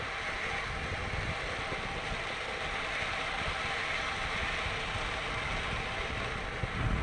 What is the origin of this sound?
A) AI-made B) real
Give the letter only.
B